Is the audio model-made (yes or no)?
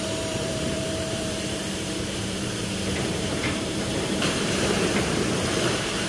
yes